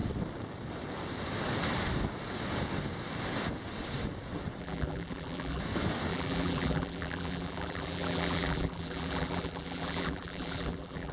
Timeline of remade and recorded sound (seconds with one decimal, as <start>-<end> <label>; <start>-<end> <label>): 0.0-4.6 recorded; 4.6-5.6 remade; 5.6-6.1 recorded; 6.1-11.1 remade